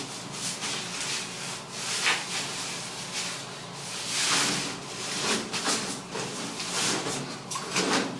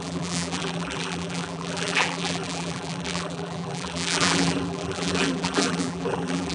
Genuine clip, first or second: first